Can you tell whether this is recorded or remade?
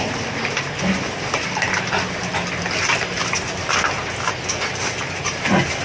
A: recorded